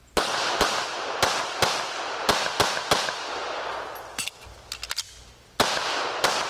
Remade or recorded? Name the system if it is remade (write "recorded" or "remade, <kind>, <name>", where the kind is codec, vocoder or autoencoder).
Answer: recorded